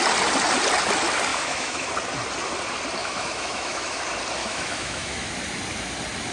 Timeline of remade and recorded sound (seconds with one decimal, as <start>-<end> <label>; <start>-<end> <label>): 0.0-1.3 recorded; 1.3-1.9 remade; 1.9-3.0 recorded; 3.0-4.0 remade; 4.0-4.4 recorded; 4.4-5.3 remade; 5.3-6.3 recorded